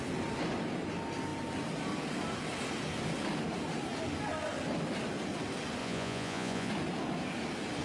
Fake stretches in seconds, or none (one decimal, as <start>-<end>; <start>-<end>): 5.8-6.7